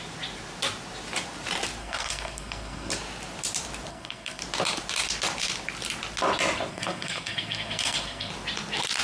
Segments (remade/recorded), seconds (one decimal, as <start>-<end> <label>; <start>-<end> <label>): 0.0-1.8 recorded; 1.8-2.9 remade; 2.9-3.9 recorded; 3.9-4.4 remade; 4.4-6.7 recorded; 6.7-8.3 remade; 8.3-9.0 recorded